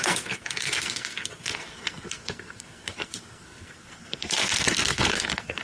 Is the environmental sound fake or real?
fake